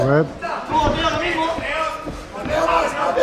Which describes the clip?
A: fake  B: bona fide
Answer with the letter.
B